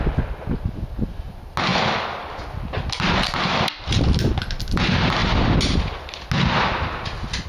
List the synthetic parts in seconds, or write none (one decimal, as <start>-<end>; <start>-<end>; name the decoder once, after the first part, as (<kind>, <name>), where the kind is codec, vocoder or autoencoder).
none